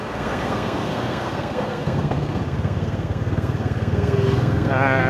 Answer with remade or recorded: remade